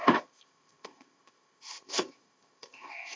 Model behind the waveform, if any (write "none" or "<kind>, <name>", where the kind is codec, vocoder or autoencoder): codec, ZipCodec